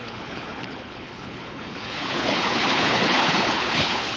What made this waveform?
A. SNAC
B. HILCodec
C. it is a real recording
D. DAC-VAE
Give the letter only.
B